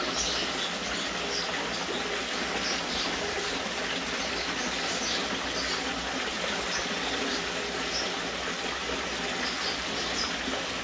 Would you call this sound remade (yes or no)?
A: no